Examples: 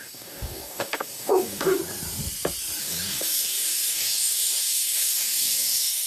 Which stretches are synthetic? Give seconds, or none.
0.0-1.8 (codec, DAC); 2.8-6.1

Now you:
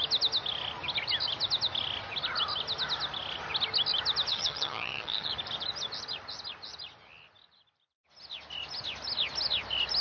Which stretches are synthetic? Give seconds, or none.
4.3-5.3 (vocoder, HiFi-GAN)

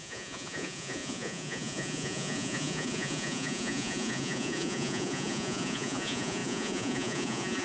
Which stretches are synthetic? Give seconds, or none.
0.0-7.6 (vocoder, Vocos)

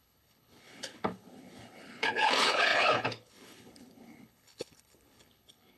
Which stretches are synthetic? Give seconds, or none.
0.0-5.8 (codec, HILCodec)

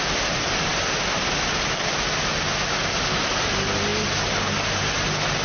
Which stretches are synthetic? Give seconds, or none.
none

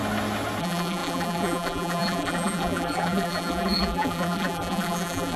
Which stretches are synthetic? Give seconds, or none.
0.6-5.4 (vocoder, BigVGAN v2)

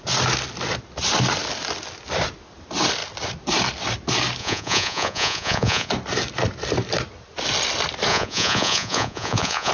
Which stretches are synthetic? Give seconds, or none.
4.4-5.9 (vocoder, Vocos); 8.1-9.7